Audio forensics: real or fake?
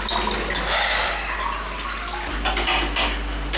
real